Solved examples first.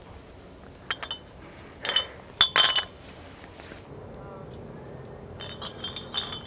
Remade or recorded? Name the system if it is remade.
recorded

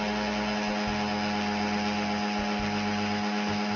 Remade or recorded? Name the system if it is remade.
recorded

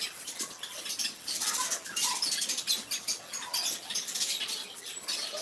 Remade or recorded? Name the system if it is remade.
recorded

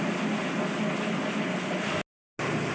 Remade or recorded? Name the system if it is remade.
recorded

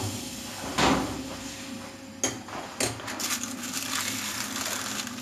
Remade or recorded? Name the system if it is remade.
recorded